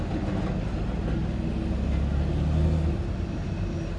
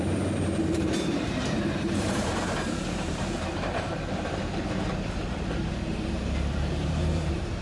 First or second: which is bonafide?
first